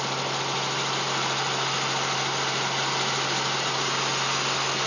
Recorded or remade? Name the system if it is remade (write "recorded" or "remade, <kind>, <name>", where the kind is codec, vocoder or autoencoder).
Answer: recorded